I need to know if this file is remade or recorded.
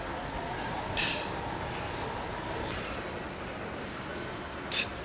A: recorded